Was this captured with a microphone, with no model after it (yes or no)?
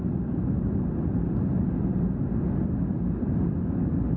yes